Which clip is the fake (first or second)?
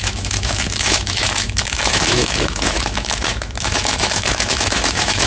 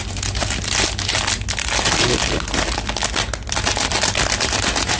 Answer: first